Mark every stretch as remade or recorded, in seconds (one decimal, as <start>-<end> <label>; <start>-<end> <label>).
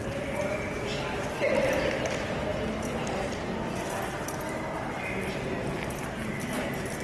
0.0-7.0 recorded